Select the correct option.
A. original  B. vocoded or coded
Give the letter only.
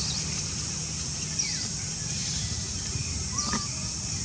A